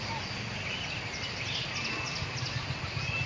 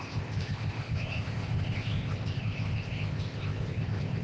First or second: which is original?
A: first